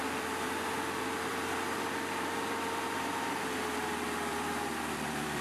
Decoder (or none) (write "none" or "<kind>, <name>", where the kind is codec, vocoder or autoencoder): vocoder, BigVGAN v2